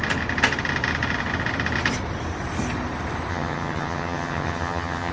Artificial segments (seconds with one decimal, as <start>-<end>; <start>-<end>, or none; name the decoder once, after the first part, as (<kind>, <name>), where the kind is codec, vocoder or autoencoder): 3.3-5.1 (vocoder, HiFi-GAN)

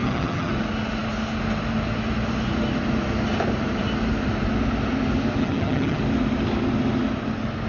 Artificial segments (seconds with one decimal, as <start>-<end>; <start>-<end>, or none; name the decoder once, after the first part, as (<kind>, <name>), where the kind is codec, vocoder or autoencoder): 0.0-0.5 (vocoder, HiFi-GAN); 5.4-6.0

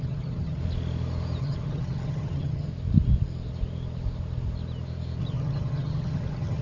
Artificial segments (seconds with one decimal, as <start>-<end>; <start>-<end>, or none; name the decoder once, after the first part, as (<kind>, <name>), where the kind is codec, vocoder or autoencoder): 0.0-0.6 (vocoder, HiFi-GAN); 1.4-2.7; 5.2-6.6

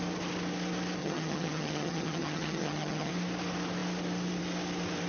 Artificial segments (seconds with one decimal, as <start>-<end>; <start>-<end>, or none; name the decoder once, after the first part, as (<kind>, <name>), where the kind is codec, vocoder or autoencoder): 1.0-3.1 (vocoder, HiFi-GAN)

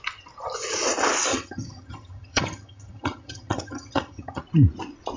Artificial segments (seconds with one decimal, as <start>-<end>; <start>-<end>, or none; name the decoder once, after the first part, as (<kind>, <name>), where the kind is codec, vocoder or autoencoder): 1.3-4.4 (vocoder, HiFi-GAN)

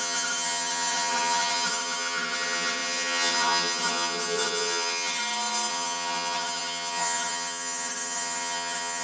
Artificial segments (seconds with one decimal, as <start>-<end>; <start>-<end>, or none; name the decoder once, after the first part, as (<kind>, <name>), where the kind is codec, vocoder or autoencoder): 0.0-5.2 (vocoder, HiFi-GAN); 5.7-9.0